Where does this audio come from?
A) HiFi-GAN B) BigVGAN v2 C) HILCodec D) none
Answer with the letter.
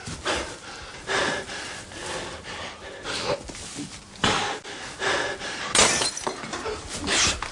D